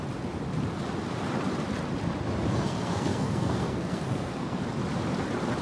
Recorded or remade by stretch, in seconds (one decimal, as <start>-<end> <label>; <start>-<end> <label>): 0.0-2.5 recorded; 2.5-4.6 remade; 4.6-5.6 recorded